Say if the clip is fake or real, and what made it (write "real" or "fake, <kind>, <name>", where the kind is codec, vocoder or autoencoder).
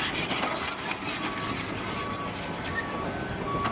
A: real